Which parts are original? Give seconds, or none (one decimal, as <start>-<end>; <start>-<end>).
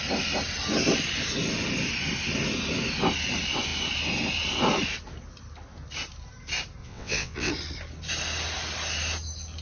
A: 0.0-6.8; 7.5-9.6